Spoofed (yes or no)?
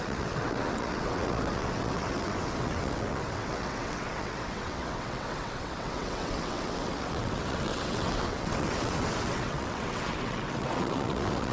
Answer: yes